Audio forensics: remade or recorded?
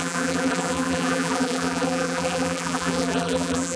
remade